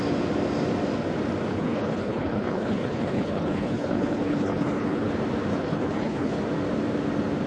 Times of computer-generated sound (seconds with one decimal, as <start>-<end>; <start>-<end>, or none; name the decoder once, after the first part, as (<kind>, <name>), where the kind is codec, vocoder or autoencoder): 1.5-5.1 (codec, HILCodec); 5.5-6.4

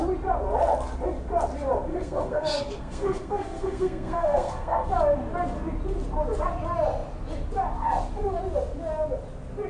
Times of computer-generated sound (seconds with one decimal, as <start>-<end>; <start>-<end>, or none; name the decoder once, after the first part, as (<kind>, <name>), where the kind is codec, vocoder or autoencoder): 1.9-4.9 (codec, SNAC)

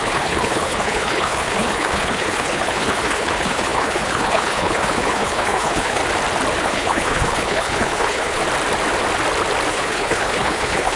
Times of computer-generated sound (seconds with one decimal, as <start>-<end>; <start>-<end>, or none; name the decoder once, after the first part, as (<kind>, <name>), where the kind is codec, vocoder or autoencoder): 0.0-6.0 (codec, HILCodec); 6.6-8.4; 9.7-11.0

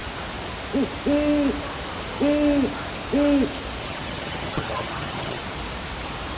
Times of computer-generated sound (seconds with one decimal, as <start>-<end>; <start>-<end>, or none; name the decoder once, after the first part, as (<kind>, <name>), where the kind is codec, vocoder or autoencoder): 3.8-5.4 (vocoder, HiFi-GAN)

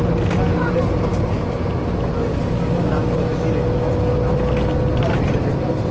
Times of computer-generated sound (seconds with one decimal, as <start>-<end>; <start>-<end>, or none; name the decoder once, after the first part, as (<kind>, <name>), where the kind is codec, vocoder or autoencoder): none